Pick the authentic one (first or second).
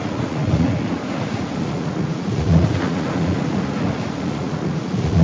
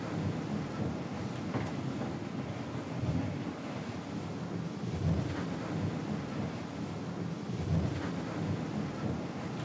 second